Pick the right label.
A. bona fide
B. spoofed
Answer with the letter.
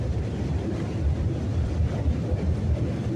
A